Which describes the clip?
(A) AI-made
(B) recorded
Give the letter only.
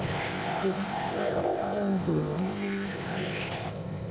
A